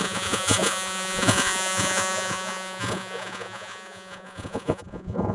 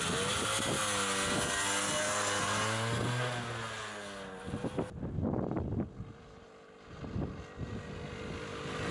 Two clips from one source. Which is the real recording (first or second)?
second